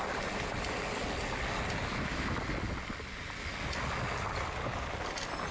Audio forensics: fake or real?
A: real